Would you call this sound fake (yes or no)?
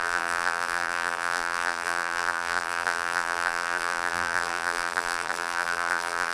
yes